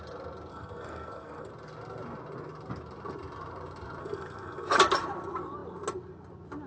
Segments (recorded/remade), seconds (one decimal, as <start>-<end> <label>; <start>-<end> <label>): 0.0-0.5 recorded; 0.5-1.5 remade; 1.5-4.0 recorded; 4.0-4.7 remade; 4.7-6.7 recorded